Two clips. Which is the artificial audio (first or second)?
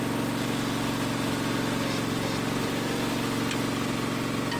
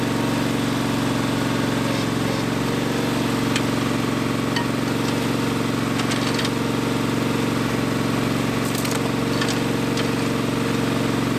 first